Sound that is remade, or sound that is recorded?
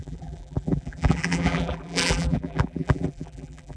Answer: remade